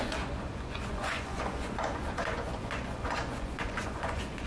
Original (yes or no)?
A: no